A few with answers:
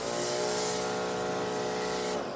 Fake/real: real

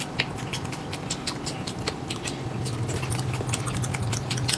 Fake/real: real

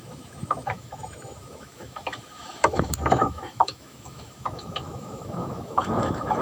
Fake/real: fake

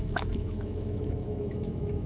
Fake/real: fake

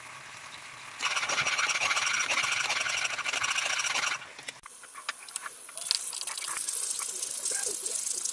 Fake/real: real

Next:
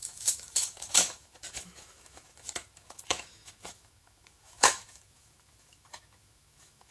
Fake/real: fake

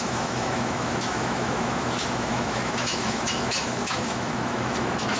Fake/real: fake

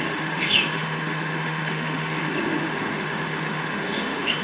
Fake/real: fake